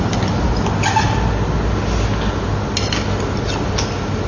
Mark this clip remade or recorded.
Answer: recorded